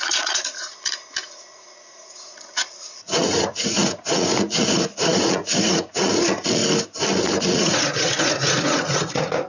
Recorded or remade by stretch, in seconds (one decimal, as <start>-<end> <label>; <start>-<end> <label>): 0.0-6.6 remade; 6.6-7.4 recorded; 7.4-9.5 remade